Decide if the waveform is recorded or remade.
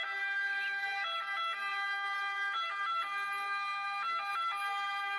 recorded